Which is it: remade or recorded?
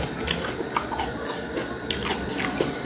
recorded